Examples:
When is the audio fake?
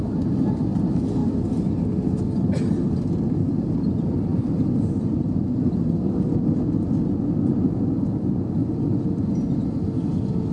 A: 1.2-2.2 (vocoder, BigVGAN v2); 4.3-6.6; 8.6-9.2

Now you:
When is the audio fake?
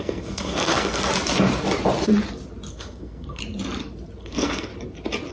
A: 0.0-1.1 (codec, SNAC); 2.7-3.4; 4.2-4.7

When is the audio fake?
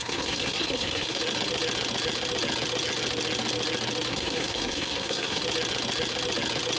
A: 0.0-1.2 (codec, SNAC); 4.1-5.4